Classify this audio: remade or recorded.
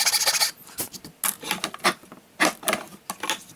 recorded